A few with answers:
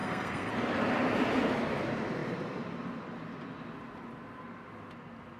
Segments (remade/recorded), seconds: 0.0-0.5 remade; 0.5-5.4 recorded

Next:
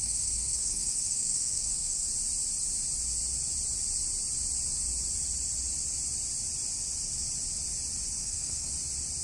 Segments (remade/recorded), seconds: 0.0-2.1 remade; 2.1-8.2 recorded; 8.2-8.7 remade; 8.7-9.2 recorded

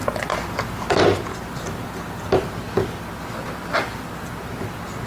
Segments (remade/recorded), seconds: 0.0-5.1 recorded